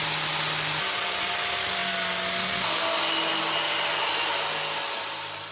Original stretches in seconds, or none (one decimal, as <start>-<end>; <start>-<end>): 0.0-5.5